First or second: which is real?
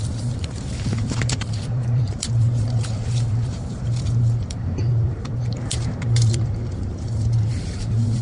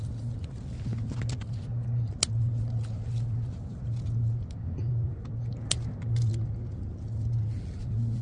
second